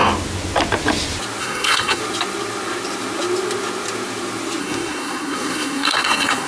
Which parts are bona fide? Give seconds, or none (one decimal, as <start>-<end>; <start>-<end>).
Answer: 0.0-1.4; 2.0-4.6